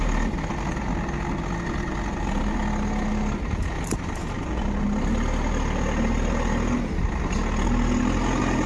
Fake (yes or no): no